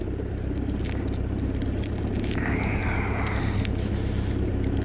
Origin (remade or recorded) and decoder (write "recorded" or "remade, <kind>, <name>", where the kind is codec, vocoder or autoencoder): recorded